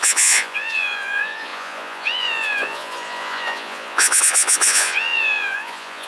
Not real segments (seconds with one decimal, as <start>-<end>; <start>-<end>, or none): 0.0-6.1